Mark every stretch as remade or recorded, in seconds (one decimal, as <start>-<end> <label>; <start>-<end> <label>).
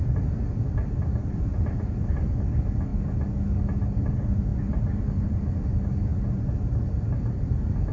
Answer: 0.0-1.2 recorded; 1.2-2.3 remade; 2.3-6.1 recorded; 6.1-7.4 remade; 7.4-7.9 recorded